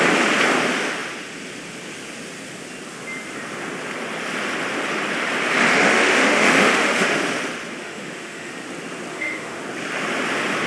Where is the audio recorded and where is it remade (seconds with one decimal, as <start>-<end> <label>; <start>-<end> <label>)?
0.0-5.7 recorded; 5.7-7.2 remade; 7.2-7.8 recorded; 7.8-8.5 remade; 8.5-9.1 recorded; 9.1-9.6 remade; 9.6-10.7 recorded